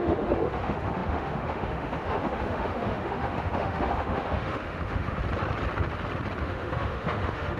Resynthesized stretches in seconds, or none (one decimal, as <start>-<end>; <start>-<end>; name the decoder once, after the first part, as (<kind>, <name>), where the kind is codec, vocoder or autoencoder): 0.0-5.2 (autoencoder, DAC-VAE); 6.4-7.6